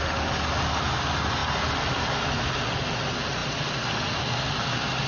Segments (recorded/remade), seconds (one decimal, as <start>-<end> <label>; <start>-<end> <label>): 0.0-5.1 recorded